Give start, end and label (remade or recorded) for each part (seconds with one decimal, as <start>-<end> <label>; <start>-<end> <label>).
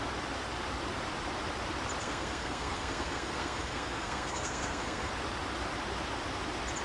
0.0-2.0 recorded; 2.0-5.1 remade; 5.1-6.8 recorded